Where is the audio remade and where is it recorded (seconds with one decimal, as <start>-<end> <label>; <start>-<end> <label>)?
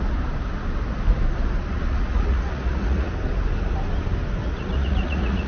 0.0-1.7 recorded; 1.7-3.1 remade; 3.1-4.4 recorded; 4.4-5.5 remade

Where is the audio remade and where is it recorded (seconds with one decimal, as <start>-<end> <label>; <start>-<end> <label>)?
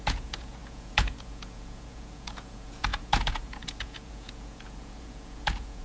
0.0-5.8 remade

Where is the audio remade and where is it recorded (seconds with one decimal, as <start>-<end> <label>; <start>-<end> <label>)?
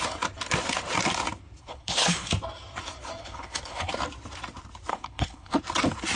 0.0-1.6 recorded; 1.6-2.3 remade; 2.3-3.2 recorded; 3.2-3.9 remade; 3.9-4.9 recorded; 4.9-5.6 remade; 5.6-6.2 recorded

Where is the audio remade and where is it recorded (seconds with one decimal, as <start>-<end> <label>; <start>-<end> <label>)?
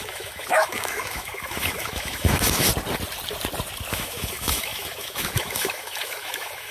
0.0-2.7 remade; 2.7-3.9 recorded; 3.9-6.7 remade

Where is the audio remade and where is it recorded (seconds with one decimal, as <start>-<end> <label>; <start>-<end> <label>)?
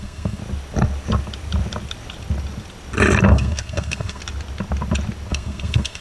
0.0-0.4 remade; 0.4-3.3 recorded; 3.3-4.2 remade; 4.2-5.3 recorded; 5.3-6.0 remade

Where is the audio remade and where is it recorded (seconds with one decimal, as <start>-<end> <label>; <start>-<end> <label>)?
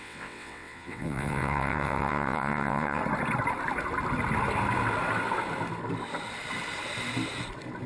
0.0-3.0 remade; 3.0-7.9 recorded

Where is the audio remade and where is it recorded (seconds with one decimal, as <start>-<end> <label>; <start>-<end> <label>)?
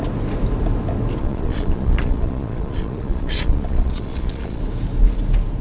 0.0-1.2 recorded; 1.2-4.6 remade; 4.6-5.6 recorded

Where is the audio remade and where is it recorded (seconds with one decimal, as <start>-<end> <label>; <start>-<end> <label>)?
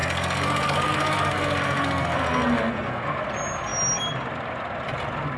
0.0-3.2 remade; 3.2-5.4 recorded